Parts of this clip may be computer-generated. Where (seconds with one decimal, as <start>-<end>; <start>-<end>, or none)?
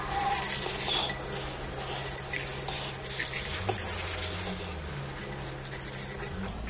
none